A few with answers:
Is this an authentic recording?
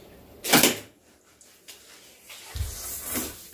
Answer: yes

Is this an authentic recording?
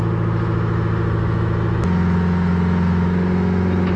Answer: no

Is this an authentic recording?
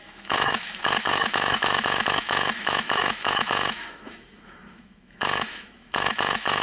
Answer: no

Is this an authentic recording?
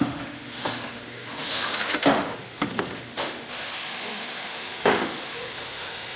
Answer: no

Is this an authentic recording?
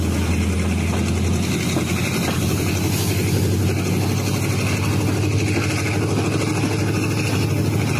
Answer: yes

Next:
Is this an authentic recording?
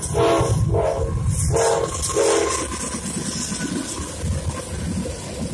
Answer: yes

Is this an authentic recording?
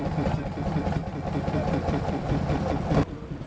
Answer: yes